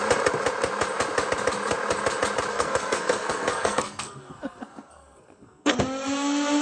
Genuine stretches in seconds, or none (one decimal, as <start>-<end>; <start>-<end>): 0.0-2.5; 5.8-6.6

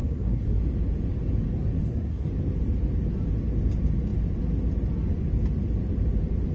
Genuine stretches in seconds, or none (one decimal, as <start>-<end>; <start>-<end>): 0.6-1.8; 2.3-6.5

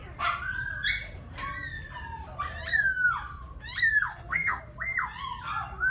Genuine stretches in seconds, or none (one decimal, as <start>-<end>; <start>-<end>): 0.0-4.1; 4.6-5.9

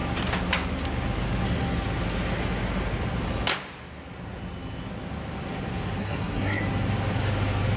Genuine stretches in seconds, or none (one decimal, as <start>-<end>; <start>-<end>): 0.0-6.0; 6.6-7.8

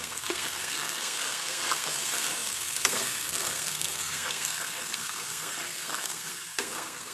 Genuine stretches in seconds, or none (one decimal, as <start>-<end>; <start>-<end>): none

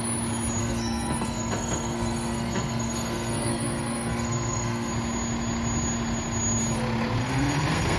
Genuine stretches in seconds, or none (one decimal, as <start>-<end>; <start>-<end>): 0.0-0.6; 4.9-7.2

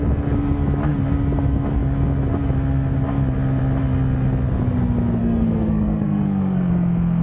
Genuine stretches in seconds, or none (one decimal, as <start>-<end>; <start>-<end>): 0.0-5.2; 6.7-7.2